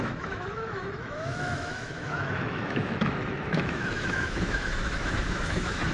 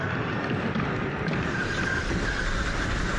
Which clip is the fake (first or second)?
first